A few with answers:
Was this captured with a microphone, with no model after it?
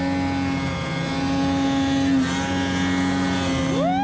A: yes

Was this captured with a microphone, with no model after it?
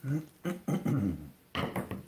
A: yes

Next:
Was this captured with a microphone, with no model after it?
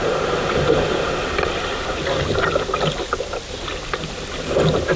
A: yes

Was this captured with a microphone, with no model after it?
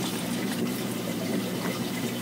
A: no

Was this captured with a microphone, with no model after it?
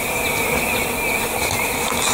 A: yes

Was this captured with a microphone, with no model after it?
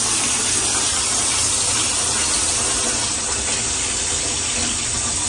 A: yes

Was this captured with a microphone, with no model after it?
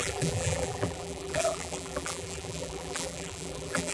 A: no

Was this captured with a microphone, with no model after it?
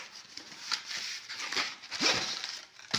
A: no